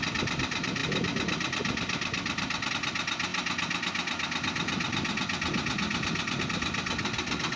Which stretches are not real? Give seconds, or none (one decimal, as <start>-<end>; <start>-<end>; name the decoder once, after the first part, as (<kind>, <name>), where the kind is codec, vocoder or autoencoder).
none